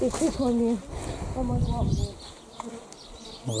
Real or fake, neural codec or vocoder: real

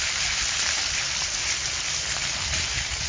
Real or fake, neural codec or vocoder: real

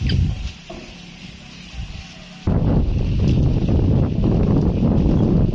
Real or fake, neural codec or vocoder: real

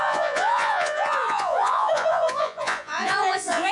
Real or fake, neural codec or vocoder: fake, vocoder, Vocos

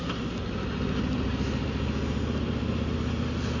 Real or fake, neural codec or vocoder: real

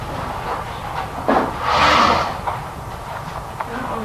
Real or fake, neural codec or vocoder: real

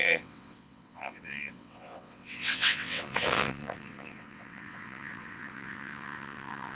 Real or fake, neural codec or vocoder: fake, vocoder, WaveNeXt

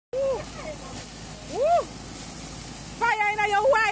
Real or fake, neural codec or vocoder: real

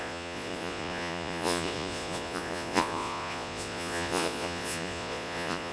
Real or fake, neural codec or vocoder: fake, vocoder, Vocos